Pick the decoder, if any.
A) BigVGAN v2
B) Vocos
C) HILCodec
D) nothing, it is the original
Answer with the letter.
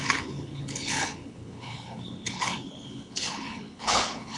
C